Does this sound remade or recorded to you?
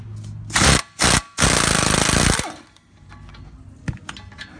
recorded